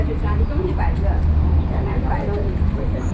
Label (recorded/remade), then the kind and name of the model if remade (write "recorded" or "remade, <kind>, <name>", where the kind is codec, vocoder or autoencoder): recorded